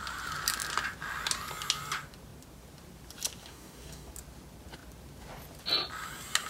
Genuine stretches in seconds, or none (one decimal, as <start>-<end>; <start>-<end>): 0.0-3.4; 4.1-6.5